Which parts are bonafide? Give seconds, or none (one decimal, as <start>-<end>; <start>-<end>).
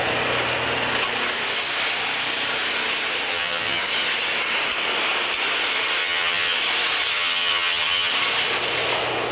0.0-3.3; 3.8-6.0; 6.6-7.1; 8.1-9.3